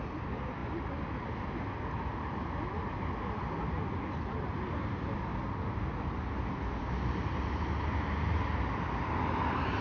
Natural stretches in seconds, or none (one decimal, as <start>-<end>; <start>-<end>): 0.0-9.8